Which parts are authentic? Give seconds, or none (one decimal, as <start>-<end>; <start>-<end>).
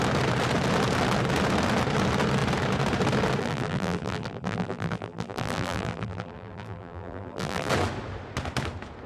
0.0-3.4; 7.7-9.1